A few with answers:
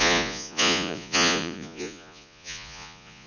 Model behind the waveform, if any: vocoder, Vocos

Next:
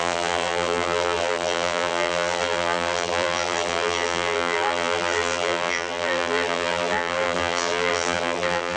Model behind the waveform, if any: vocoder, BigVGAN v2